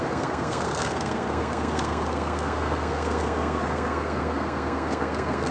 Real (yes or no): no